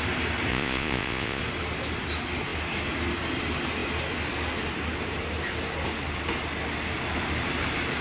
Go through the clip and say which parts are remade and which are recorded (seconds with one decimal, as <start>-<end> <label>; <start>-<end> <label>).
0.0-0.5 recorded; 0.5-1.4 remade; 1.4-8.0 recorded

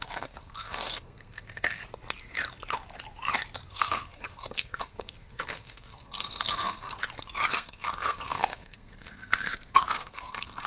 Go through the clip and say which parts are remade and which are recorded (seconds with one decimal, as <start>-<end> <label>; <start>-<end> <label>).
0.0-1.8 remade; 1.8-3.7 recorded; 3.7-7.0 remade; 7.0-7.5 recorded; 7.5-10.7 remade